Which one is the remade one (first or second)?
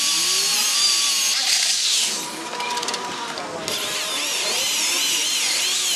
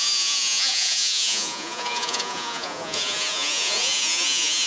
second